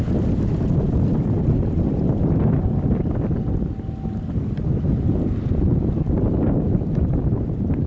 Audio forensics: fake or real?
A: real